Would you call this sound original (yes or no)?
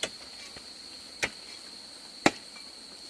yes